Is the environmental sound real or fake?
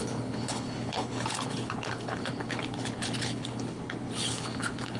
fake